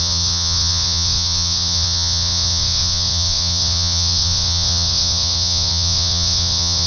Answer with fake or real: fake